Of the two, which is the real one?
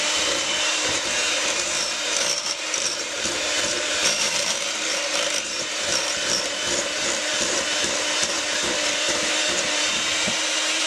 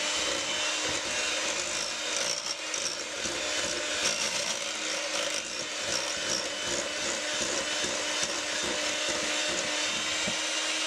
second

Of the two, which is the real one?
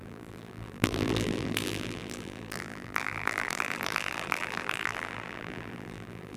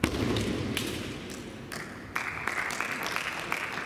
second